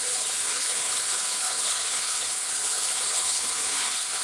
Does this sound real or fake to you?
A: fake